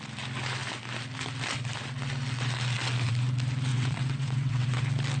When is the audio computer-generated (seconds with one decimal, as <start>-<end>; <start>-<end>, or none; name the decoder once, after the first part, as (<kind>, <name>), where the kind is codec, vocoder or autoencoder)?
3.7-4.8 (vocoder, WaveNeXt)